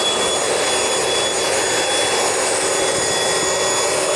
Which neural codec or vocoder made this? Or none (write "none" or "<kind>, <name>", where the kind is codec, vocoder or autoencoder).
none